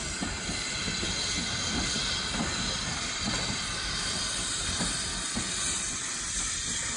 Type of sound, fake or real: real